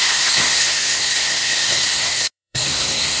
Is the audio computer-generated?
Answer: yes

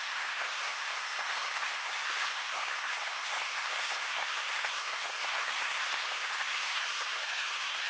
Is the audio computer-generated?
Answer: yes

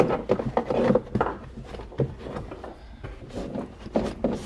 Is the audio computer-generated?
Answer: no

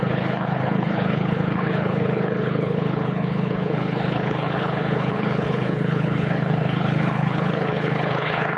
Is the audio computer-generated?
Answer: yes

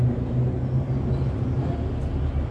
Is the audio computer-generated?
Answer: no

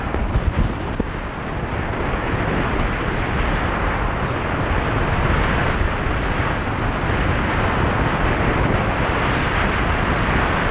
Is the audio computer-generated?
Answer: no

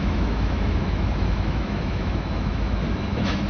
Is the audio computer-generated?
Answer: yes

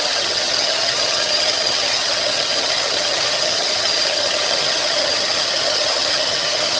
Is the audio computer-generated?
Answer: yes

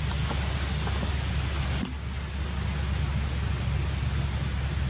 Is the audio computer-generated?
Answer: no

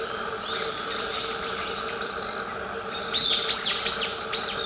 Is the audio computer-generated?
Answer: yes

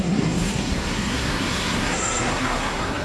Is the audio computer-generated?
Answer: yes